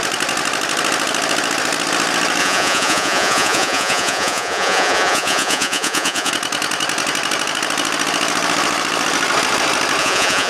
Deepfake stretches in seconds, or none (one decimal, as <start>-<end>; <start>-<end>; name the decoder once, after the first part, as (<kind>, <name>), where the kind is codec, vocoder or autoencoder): 2.4-6.3 (vocoder, Vocos); 10.0-10.5